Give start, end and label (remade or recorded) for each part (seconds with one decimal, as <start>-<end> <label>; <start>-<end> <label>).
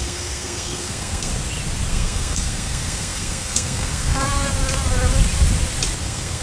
0.0-1.3 remade; 1.3-1.9 recorded; 1.9-4.3 remade; 4.3-6.0 recorded; 6.0-6.4 remade